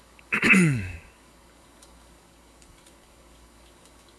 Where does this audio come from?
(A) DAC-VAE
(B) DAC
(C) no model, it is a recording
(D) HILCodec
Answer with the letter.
B